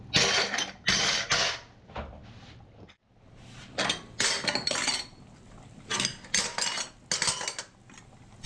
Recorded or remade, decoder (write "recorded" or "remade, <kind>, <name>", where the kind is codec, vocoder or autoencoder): recorded